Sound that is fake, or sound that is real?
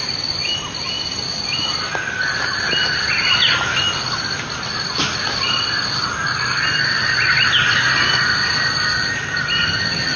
real